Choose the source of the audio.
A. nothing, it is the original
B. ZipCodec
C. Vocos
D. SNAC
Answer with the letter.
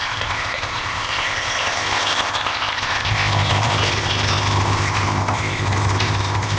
B